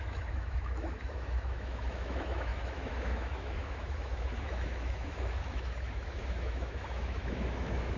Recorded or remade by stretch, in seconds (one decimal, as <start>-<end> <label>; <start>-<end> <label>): 0.0-8.0 remade